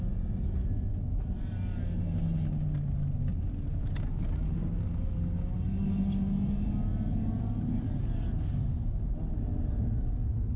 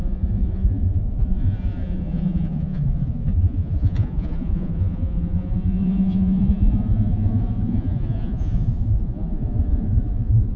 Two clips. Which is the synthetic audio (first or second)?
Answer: second